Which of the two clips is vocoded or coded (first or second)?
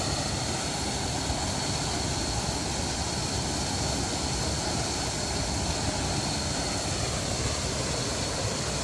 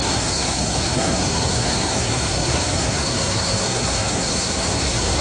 second